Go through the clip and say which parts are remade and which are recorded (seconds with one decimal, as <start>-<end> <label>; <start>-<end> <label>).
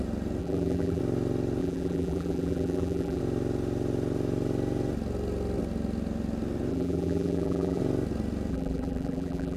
0.0-0.4 recorded; 0.4-1.0 remade; 1.0-1.6 recorded; 1.6-3.2 remade; 3.2-6.7 recorded; 6.7-7.8 remade; 7.8-8.5 recorded; 8.5-9.6 remade